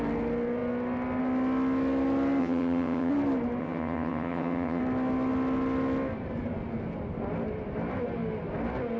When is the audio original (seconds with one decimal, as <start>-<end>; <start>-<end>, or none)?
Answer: 0.0-2.4; 3.1-3.6; 4.8-9.0